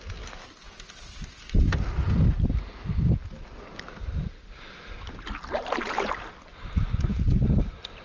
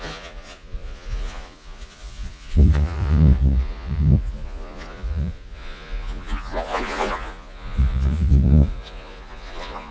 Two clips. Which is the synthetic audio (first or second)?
second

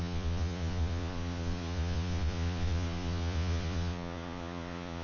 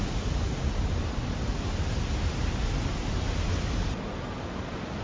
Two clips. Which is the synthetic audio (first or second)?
first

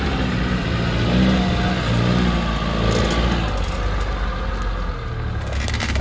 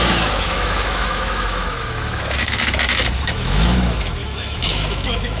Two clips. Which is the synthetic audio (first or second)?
second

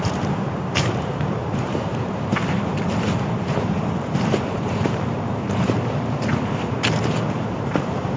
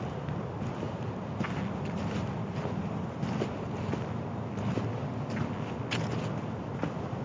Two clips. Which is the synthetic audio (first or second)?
first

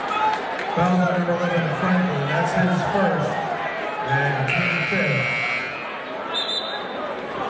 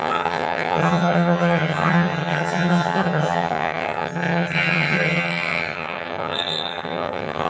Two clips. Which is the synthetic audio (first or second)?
second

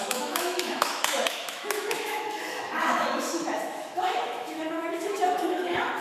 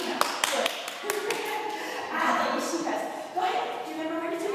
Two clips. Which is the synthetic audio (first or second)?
first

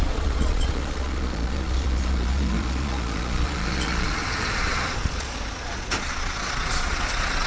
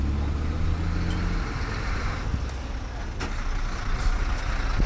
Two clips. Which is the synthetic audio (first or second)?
first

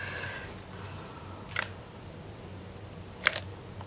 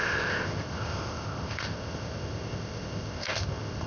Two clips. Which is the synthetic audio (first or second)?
second